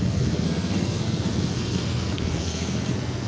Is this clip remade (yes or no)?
yes